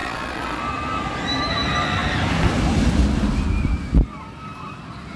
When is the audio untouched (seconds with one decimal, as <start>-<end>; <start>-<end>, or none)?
0.6-5.2